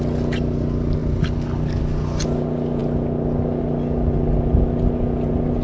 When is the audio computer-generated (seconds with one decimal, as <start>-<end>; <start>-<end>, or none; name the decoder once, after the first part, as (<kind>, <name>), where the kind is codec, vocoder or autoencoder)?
none